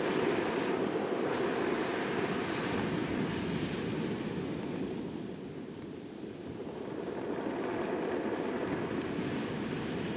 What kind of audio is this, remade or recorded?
recorded